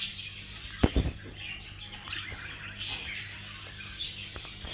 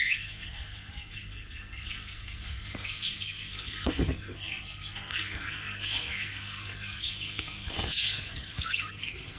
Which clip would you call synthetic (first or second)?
second